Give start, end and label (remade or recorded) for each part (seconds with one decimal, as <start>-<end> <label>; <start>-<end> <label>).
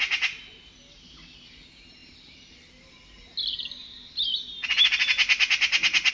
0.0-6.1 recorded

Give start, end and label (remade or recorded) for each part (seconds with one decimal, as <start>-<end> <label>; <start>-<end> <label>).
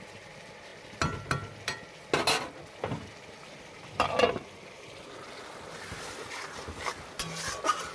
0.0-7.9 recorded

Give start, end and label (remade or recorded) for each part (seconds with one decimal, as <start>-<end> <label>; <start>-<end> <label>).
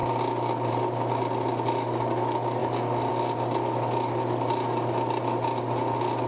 0.0-6.3 recorded